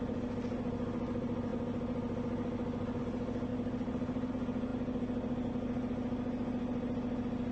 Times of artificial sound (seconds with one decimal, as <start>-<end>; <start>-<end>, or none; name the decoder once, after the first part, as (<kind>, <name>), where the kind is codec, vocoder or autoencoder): 3.5-4.3 (vocoder, BigVGAN v2)